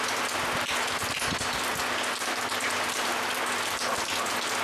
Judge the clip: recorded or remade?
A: recorded